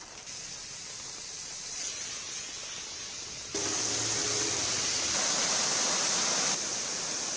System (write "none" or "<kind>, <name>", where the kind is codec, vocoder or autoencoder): none